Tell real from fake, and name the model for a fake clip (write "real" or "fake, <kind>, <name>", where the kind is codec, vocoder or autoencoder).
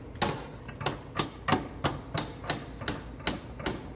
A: real